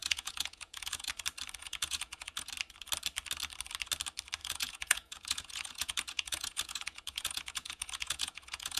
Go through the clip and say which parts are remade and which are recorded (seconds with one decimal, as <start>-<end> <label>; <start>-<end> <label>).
0.0-1.1 remade; 1.1-1.6 recorded; 1.6-2.5 remade; 2.5-4.4 recorded; 4.4-8.8 remade